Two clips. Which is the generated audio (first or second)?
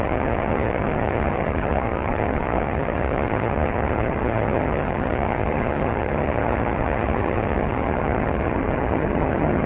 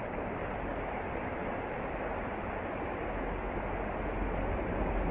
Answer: first